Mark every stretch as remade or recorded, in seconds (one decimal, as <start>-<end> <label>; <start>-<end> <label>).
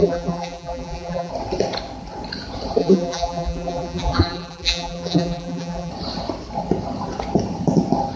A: 0.0-1.3 remade; 1.3-2.8 recorded; 2.8-5.9 remade; 5.9-8.2 recorded